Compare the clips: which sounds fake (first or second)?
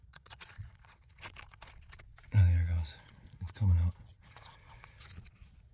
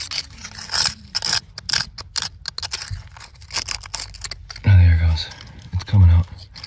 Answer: first